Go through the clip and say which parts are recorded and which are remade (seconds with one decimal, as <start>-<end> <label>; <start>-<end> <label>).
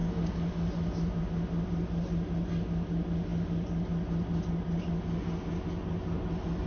0.0-6.7 recorded